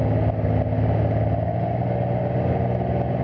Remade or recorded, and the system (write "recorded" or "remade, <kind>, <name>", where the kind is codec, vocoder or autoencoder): recorded